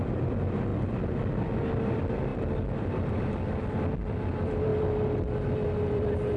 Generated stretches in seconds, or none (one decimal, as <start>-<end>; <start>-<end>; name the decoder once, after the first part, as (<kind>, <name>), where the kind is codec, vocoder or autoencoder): 0.0-6.4 (vocoder, BigVGAN v2)